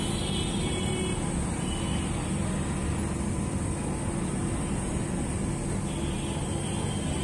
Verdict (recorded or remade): recorded